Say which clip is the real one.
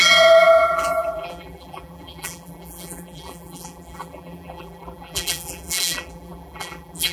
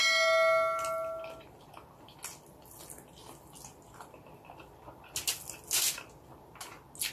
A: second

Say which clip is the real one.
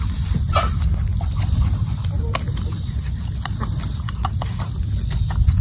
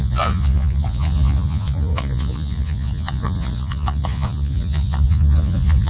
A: first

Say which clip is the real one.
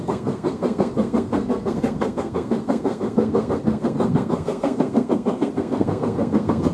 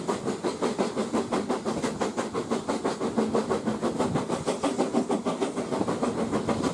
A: second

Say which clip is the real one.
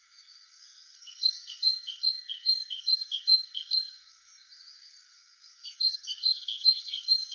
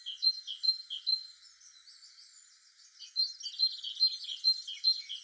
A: second